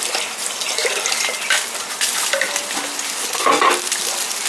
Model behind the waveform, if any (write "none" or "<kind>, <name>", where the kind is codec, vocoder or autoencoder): none